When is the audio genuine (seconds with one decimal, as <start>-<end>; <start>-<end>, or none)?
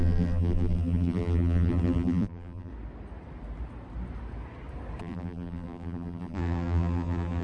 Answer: 2.7-5.0